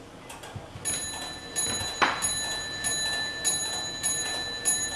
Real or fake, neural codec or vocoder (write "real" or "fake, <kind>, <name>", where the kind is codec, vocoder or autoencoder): real